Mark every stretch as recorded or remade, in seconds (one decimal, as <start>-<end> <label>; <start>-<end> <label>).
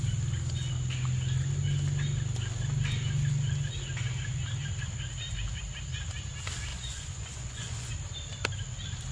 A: 0.0-6.7 recorded; 6.7-7.9 remade; 7.9-9.1 recorded